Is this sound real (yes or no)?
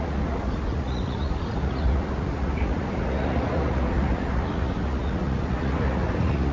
no